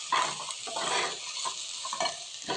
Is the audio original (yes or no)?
yes